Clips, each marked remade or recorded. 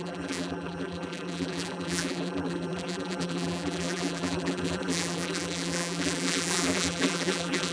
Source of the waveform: remade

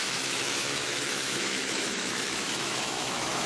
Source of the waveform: remade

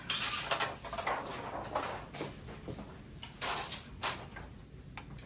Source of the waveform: recorded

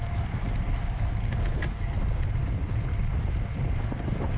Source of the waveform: recorded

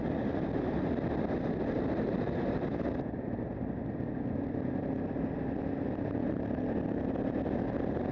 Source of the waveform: recorded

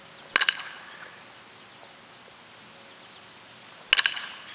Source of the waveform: recorded